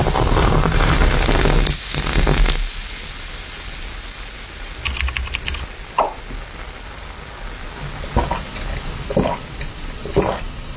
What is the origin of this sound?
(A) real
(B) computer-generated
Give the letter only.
A